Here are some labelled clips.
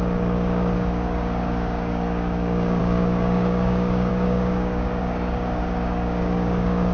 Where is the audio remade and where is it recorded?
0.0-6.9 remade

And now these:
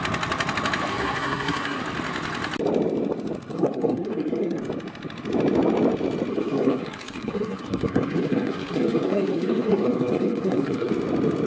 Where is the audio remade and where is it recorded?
0.0-0.9 recorded; 0.9-1.8 remade; 1.8-3.5 recorded; 3.5-4.6 remade; 4.6-6.3 recorded; 6.3-10.9 remade; 10.9-11.5 recorded

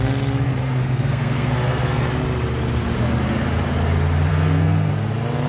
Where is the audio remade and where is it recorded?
0.0-0.6 recorded; 0.6-2.0 remade; 2.0-4.3 recorded; 4.3-4.9 remade; 4.9-5.5 recorded

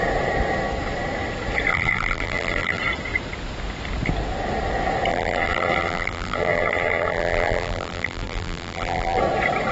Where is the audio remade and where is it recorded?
0.0-1.7 recorded; 1.7-2.8 remade; 2.8-5.1 recorded; 5.1-9.2 remade; 9.2-9.7 recorded

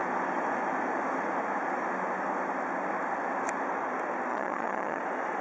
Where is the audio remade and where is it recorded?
0.0-4.3 recorded; 4.3-5.0 remade; 5.0-5.4 recorded

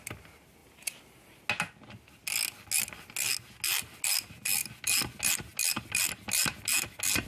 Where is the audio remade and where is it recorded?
0.0-0.6 recorded; 0.6-1.4 remade; 1.4-7.3 recorded

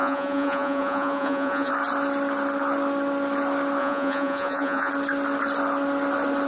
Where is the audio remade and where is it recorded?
0.0-1.7 remade; 1.7-3.8 recorded; 3.8-4.9 remade; 4.9-6.5 recorded